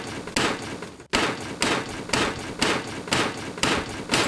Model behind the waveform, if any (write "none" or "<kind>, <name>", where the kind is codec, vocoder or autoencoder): none